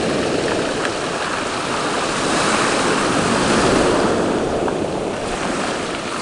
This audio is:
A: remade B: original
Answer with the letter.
A